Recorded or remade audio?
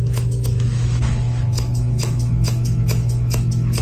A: remade